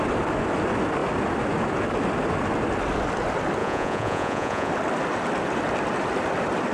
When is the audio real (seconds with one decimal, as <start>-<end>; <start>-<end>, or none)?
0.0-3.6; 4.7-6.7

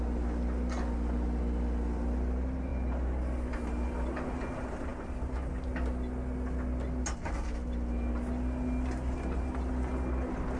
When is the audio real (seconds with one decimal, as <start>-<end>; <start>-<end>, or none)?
0.0-10.6

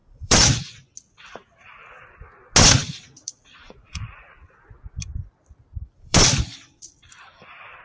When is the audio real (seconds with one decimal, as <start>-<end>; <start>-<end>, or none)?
0.6-2.8

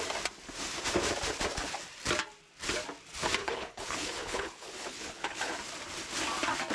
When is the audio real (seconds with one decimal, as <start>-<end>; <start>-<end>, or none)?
0.0-3.4; 5.5-6.7

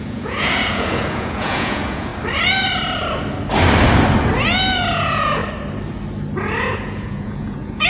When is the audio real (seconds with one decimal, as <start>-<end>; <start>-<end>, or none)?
2.1-4.9; 5.4-6.6

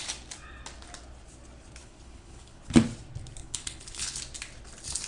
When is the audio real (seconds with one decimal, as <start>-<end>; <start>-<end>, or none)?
0.0-1.8; 2.6-3.4; 4.2-5.1

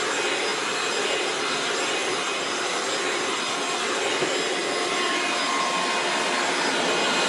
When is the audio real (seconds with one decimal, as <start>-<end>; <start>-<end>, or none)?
0.0-7.3